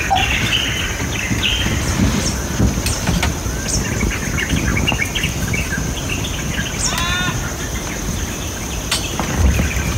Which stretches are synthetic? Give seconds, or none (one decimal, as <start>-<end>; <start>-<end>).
none